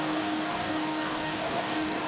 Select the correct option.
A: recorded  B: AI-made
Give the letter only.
B